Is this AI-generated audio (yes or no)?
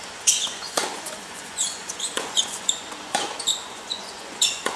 yes